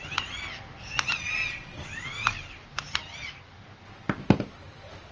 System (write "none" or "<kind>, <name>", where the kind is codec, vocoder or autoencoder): none